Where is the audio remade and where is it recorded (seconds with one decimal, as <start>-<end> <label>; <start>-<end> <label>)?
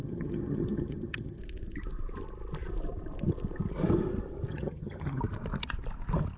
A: 0.0-1.4 remade; 1.4-4.5 recorded; 4.5-5.2 remade; 5.2-6.4 recorded